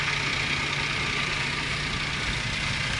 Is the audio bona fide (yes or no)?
yes